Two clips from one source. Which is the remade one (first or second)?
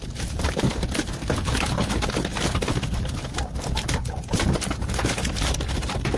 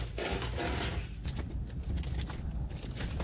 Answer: first